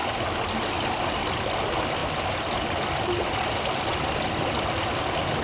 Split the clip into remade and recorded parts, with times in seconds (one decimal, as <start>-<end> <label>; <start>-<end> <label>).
0.0-2.0 recorded; 2.0-4.8 remade; 4.8-5.4 recorded